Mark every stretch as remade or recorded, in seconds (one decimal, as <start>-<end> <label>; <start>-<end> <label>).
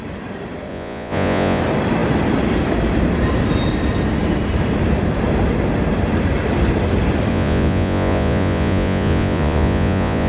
0.0-0.7 recorded; 0.7-1.6 remade; 1.6-7.3 recorded; 7.3-10.3 remade